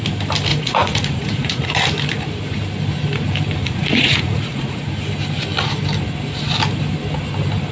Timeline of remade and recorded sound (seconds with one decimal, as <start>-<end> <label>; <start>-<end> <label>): 0.0-0.5 recorded; 0.5-1.9 remade; 1.9-3.6 recorded; 3.6-4.9 remade; 4.9-7.7 recorded